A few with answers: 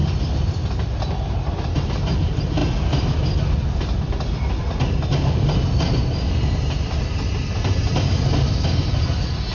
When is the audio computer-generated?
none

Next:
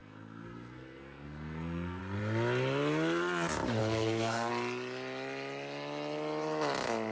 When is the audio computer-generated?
0.0-2.0 (codec, SNAC); 3.8-4.5

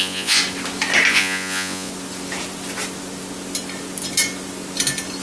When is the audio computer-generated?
0.0-0.4 (vocoder, Vocos); 1.1-1.9

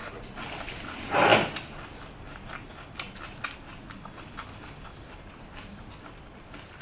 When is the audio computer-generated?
0.6-1.3 (vocoder, BigVGAN v2); 5.4-6.8

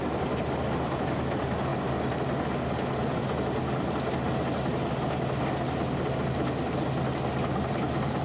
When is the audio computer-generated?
none

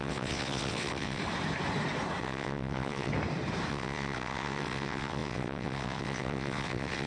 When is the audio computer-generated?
0.0-1.2 (vocoder, WaveNeXt); 2.2-3.1; 3.7-7.1

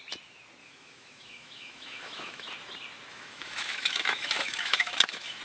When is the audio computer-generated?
0.6-2.5 (autoencoder, DAC-VAE); 3.1-5.4